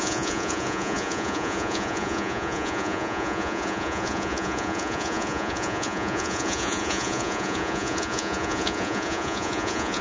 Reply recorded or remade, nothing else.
remade